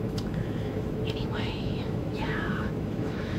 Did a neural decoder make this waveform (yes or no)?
yes